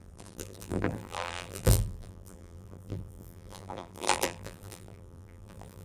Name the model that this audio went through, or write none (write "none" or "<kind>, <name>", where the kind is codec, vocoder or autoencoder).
vocoder, BigVGAN v2